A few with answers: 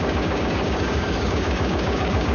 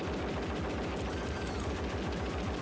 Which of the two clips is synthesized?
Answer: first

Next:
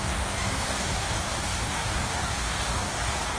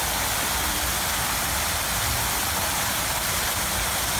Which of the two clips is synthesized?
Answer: first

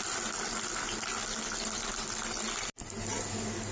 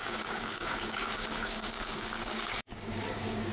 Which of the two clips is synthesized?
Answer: second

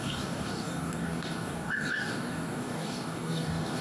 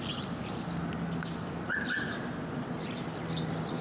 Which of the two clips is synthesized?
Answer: first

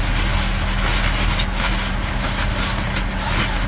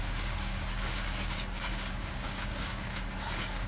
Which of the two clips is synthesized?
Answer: second